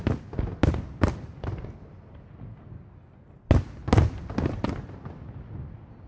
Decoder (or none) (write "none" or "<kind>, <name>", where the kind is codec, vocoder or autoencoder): none